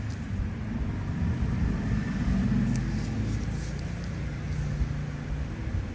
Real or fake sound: real